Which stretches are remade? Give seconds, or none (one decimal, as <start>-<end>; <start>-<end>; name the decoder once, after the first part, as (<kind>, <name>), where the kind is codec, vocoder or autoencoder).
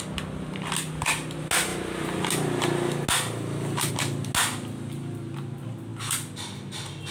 none